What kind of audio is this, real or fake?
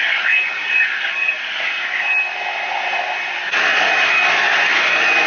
real